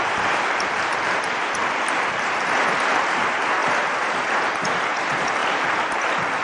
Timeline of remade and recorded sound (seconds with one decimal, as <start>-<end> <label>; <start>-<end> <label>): 0.0-1.6 remade; 1.6-2.2 recorded; 2.2-5.4 remade; 5.4-6.4 recorded